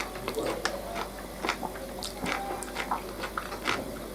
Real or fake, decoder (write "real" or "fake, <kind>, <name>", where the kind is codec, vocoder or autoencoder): real